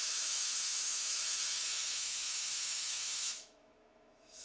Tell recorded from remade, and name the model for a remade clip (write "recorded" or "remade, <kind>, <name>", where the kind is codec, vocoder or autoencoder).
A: remade, autoencoder, DAC-VAE